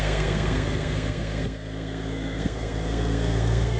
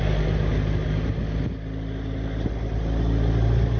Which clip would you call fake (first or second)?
first